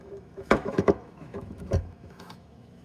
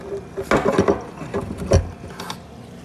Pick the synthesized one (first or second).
first